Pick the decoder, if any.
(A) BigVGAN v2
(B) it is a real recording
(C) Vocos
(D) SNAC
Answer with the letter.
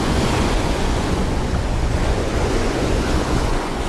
C